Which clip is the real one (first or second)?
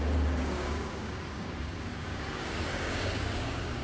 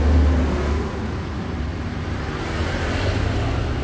second